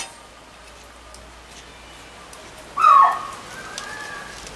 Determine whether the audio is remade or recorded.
recorded